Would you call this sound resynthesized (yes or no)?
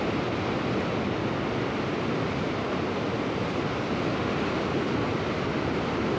no